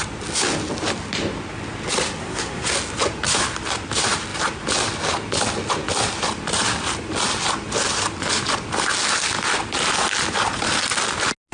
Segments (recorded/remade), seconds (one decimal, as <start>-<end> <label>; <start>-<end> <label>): 0.0-2.2 recorded; 2.2-2.7 remade; 2.7-11.5 recorded